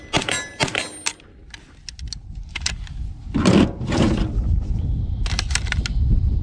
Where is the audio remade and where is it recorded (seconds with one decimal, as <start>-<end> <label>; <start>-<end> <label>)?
0.0-6.4 recorded